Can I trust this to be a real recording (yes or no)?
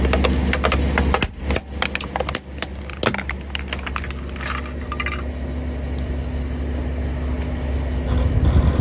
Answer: yes